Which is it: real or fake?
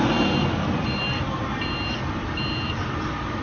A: real